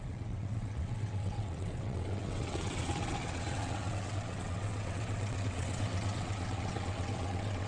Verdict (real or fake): fake